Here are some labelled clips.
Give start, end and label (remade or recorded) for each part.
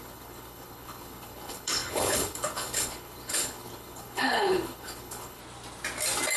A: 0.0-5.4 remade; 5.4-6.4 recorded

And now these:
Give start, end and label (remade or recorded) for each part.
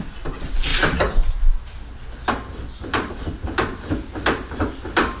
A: 0.0-5.2 recorded